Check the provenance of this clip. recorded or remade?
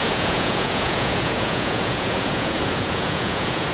remade